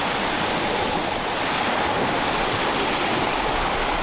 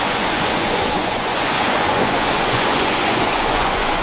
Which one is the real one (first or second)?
first